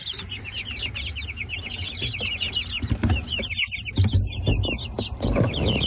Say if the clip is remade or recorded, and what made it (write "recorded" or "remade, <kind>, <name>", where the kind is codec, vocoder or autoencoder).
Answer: recorded